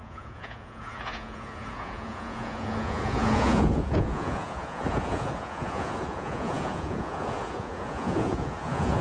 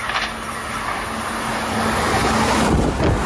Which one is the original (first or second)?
second